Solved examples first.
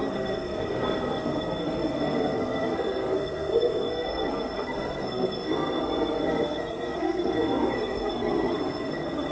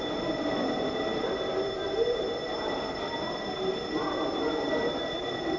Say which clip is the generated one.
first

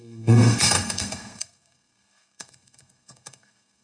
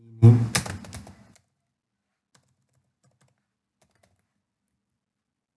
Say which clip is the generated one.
first